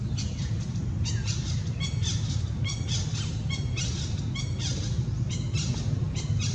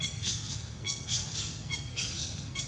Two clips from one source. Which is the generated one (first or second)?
second